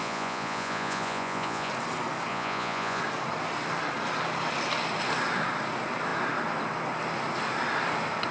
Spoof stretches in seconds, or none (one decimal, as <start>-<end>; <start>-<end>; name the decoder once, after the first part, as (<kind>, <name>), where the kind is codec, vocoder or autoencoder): 0.0-1.7 (vocoder, Vocos); 2.3-3.0